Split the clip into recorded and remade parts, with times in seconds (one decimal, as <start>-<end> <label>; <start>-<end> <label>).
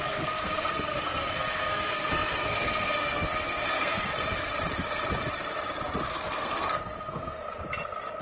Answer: 0.0-4.1 remade; 4.1-6.1 recorded; 6.1-7.4 remade; 7.4-8.2 recorded